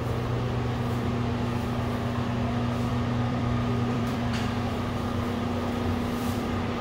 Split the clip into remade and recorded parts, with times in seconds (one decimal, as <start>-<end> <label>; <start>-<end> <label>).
0.0-2.9 recorded; 2.9-4.7 remade; 4.7-6.2 recorded; 6.2-6.8 remade